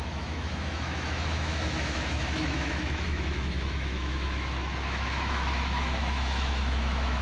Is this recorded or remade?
remade